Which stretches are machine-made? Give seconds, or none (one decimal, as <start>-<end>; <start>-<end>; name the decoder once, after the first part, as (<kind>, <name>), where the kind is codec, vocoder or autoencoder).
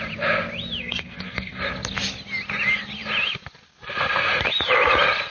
0.8-1.6 (codec, SNAC)